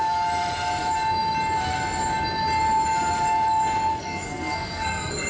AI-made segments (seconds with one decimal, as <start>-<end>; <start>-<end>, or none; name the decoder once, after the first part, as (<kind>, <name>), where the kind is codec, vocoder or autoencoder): 3.9-5.3 (codec, SNAC)

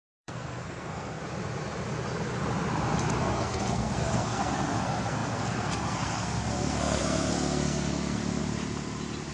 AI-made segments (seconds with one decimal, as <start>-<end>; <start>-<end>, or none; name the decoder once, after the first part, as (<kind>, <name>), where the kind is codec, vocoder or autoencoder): 0.0-1.2 (codec, SNAC); 3.2-8.4

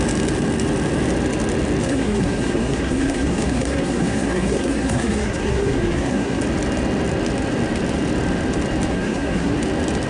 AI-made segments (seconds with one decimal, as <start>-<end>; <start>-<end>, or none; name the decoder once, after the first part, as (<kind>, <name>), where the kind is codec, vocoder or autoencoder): 1.8-6.4 (codec, SNAC); 8.9-9.5

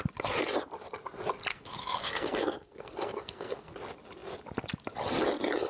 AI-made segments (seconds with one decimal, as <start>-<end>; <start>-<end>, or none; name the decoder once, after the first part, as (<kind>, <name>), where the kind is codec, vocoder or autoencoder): 1.5-3.7 (codec, SNAC)

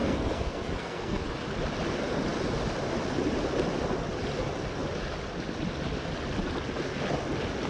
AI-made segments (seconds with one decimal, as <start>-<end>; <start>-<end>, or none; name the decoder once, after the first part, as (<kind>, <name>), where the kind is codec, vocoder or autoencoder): 0.0-1.2 (codec, SNAC)

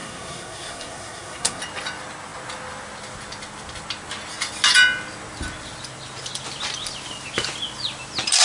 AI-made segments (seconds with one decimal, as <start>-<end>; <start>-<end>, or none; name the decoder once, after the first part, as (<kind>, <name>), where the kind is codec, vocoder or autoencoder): 0.0-1.6 (codec, SNAC)

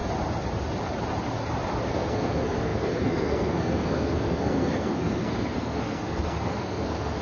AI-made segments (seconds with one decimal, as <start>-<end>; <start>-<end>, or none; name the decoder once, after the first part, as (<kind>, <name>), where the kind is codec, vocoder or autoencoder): 1.9-7.2 (codec, SNAC)